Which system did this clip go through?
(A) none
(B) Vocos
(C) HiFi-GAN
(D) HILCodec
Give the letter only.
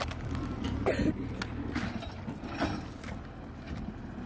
A